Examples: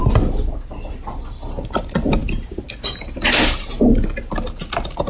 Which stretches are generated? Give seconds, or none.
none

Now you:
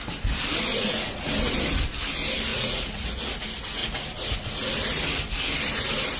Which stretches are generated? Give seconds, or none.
0.7-1.3 (vocoder, Vocos); 2.5-3.1; 3.8-4.5

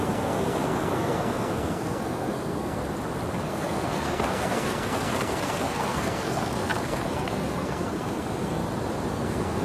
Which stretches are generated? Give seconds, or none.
0.0-2.8 (codec, SNAC); 3.3-8.6; 9.1-9.6

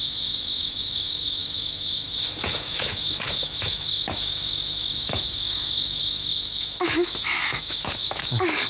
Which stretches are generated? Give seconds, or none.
0.0-8.7 (autoencoder, DAC-VAE)

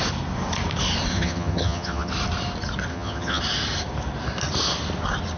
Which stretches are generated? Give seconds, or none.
1.1-2.1 (vocoder, HiFi-GAN); 2.9-3.4

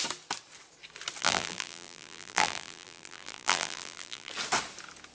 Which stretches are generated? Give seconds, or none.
1.2-4.3 (vocoder, BigVGAN v2)